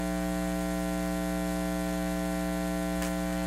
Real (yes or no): yes